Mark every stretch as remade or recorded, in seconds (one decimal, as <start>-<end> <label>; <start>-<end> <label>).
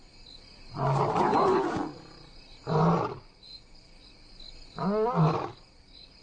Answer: 0.0-6.2 recorded